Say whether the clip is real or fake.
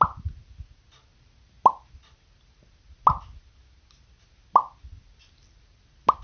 real